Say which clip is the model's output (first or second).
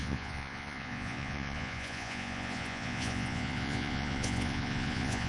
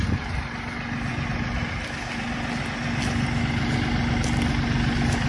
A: first